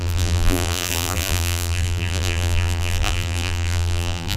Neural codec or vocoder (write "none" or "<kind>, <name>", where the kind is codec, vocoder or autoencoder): vocoder, BigVGAN v2